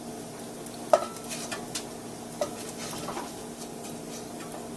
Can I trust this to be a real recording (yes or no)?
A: no